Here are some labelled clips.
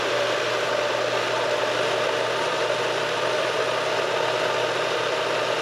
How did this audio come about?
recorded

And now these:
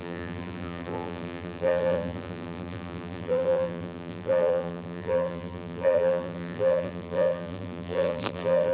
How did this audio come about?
remade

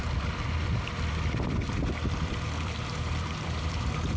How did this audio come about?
remade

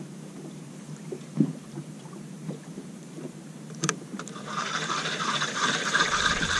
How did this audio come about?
remade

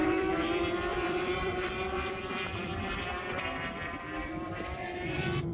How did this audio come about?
remade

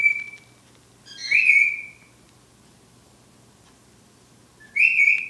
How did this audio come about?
recorded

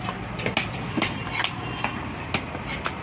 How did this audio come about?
recorded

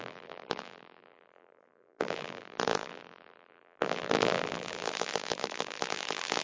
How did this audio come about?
remade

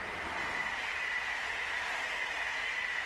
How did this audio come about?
recorded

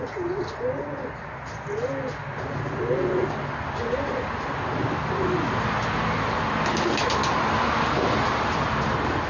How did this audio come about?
recorded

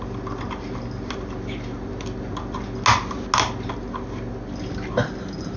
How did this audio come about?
recorded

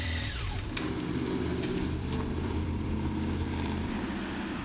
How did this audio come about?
remade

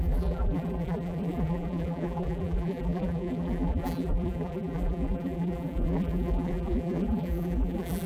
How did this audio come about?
remade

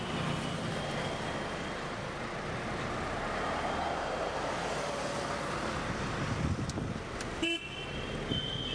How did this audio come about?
recorded